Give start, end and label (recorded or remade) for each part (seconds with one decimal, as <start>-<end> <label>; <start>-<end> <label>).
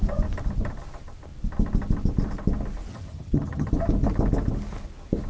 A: 0.0-2.9 recorded; 2.9-3.7 remade; 3.7-5.3 recorded